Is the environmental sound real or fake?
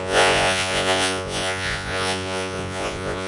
fake